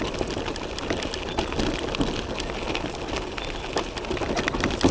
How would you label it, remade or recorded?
recorded